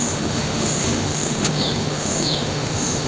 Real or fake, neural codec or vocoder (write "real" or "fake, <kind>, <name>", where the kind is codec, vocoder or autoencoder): fake, autoencoder, DAC-VAE